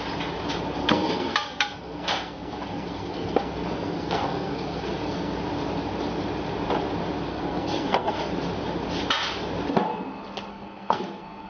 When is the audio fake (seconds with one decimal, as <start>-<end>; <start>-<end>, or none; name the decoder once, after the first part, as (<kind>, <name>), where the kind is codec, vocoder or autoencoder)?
0.8-5.4 (codec, SNAC); 7.3-8.3; 10.5-11.5